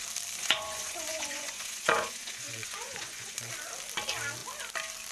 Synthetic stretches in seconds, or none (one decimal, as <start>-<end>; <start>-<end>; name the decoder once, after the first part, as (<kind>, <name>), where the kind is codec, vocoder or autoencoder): 0.4-3.5 (vocoder, Vocos)